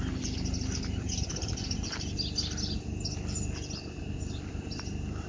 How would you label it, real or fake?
real